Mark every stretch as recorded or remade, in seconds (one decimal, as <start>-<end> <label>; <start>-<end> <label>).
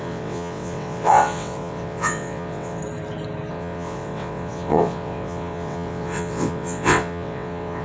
0.0-2.8 remade; 2.8-3.5 recorded; 3.5-7.8 remade